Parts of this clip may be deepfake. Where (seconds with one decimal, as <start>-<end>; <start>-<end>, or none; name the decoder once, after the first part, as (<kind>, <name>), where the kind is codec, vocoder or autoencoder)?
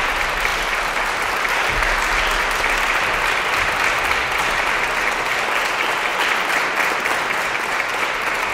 none